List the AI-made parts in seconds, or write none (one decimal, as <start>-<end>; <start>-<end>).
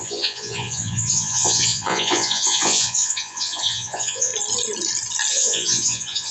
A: 0.0-4.3; 5.3-6.3